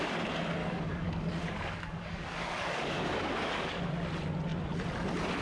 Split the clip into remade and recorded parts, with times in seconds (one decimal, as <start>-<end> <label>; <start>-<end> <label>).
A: 0.0-0.6 recorded; 0.6-3.8 remade; 3.8-5.4 recorded